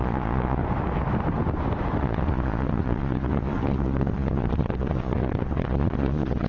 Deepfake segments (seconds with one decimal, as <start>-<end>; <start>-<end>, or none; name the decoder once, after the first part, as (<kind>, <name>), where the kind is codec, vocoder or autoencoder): 0.0-0.6 (vocoder, Vocos); 2.0-6.5